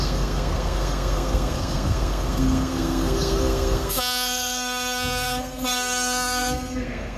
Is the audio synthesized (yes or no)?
yes